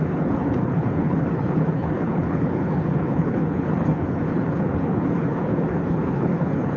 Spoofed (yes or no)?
yes